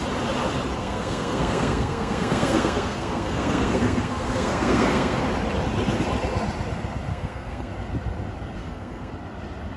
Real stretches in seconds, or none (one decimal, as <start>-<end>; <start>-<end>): 0.0-0.8; 5.2-7.1; 7.7-8.6; 9.1-9.8